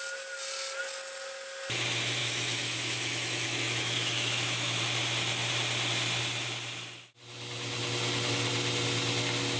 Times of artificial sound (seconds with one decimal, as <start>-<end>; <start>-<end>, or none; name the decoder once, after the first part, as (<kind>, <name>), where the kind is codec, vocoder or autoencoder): 2.2-4.8 (autoencoder, DAC-VAE)